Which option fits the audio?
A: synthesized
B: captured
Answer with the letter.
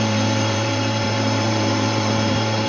A